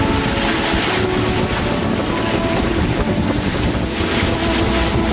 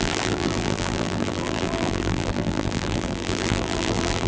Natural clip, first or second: first